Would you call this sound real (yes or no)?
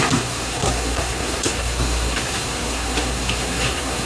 no